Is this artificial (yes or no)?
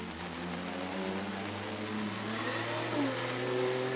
no